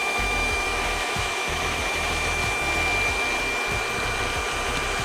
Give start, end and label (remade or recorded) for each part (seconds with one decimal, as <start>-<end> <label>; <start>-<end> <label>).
0.0-2.4 remade; 2.4-5.0 recorded